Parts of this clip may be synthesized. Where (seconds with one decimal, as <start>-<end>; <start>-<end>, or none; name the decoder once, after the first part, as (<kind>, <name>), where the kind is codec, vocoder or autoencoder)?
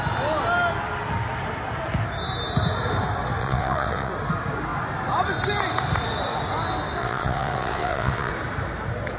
3.4-4.1 (vocoder, WaveNeXt); 7.0-8.3